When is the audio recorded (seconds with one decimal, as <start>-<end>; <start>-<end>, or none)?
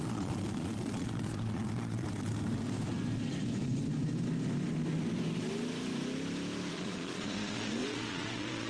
2.3-6.7